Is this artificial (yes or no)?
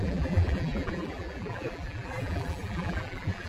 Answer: yes